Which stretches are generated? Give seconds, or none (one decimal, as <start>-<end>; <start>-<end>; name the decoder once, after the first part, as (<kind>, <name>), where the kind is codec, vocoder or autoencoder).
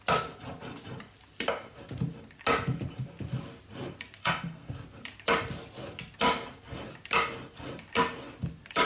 4.2-4.7 (codec, SNAC)